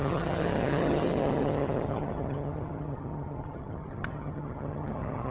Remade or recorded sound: remade